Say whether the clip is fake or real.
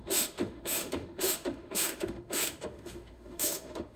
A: fake